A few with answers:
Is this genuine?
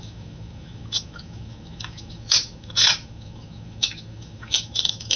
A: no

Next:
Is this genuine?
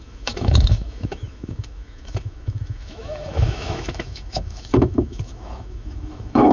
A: no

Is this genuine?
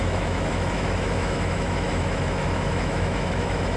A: no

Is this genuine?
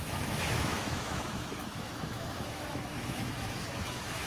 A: no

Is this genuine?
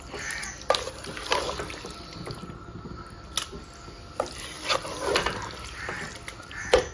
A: yes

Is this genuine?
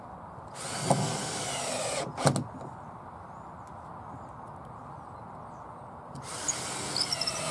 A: yes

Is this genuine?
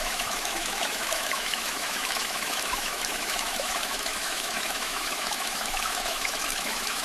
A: no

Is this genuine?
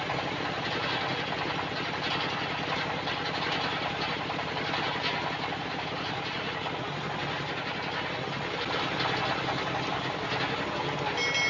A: yes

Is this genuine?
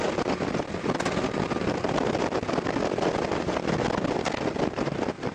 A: yes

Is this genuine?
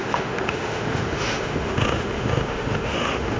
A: no